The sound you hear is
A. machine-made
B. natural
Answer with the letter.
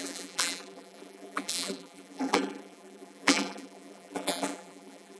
A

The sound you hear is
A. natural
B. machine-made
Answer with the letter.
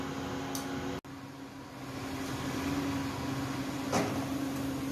A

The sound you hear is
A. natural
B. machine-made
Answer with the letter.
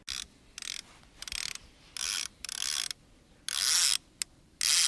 A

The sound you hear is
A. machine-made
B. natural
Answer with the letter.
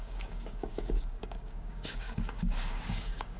A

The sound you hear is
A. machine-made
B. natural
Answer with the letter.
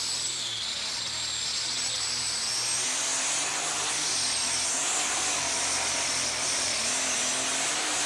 B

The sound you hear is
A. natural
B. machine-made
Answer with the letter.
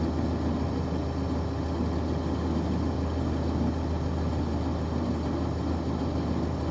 A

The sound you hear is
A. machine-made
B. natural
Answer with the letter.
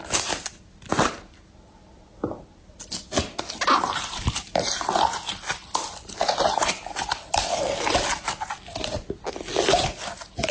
B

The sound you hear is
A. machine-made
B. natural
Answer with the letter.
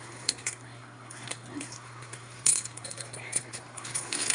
A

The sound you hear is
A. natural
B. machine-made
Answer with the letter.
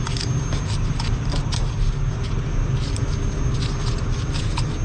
A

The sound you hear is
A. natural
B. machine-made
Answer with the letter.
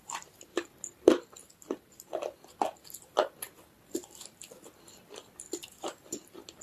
A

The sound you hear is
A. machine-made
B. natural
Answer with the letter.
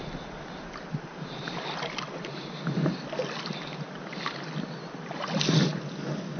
B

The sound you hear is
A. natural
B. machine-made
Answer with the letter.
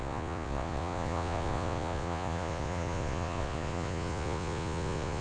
B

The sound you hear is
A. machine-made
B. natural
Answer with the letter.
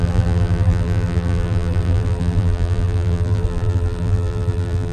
A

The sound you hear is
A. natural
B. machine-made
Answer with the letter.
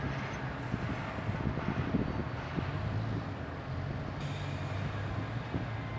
A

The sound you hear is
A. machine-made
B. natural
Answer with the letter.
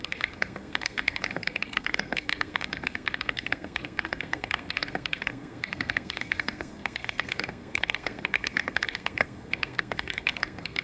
A